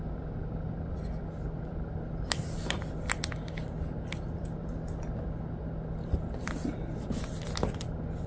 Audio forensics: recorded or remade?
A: recorded